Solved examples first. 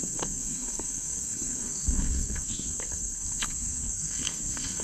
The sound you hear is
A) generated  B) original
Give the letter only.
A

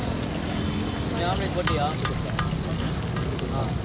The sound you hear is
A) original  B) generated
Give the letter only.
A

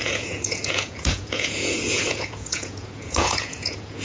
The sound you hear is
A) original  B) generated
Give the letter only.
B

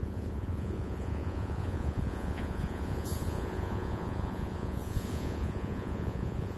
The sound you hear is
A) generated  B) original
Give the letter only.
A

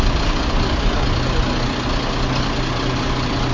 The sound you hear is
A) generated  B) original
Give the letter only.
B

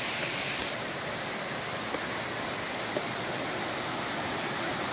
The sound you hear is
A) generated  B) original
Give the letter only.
B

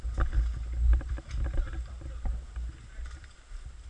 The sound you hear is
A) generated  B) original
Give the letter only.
B